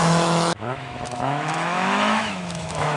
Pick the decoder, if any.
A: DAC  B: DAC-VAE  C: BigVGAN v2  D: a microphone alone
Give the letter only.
B